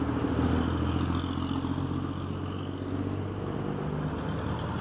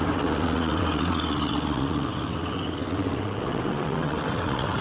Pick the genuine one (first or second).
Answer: first